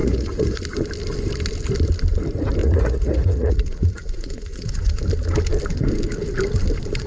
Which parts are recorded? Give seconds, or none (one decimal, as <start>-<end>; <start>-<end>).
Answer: 0.6-2.6; 5.0-7.1